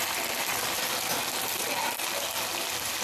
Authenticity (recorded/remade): recorded